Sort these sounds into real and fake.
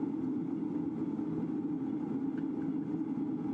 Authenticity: real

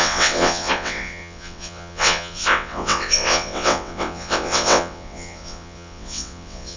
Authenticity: fake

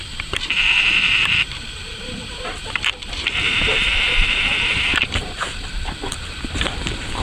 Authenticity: fake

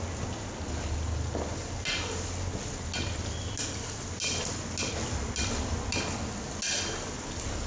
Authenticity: real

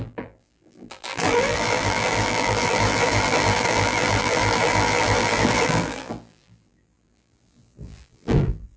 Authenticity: fake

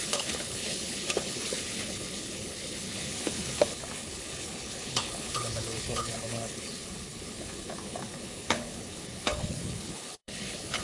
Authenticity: fake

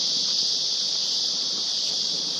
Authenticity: fake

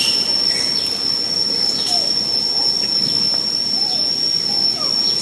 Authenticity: real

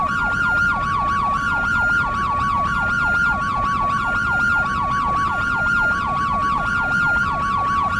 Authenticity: real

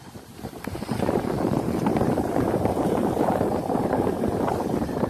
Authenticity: fake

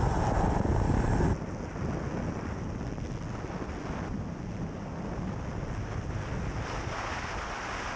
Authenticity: real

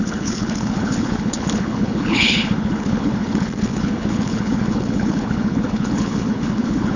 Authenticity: fake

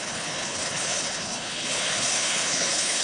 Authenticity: fake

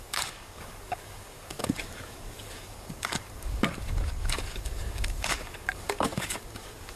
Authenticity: fake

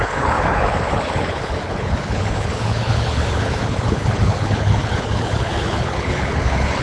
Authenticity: fake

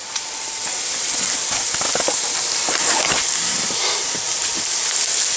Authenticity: real